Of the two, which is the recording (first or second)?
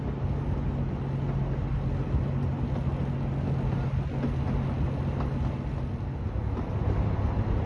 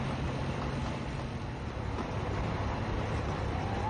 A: first